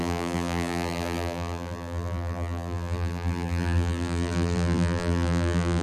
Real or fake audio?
fake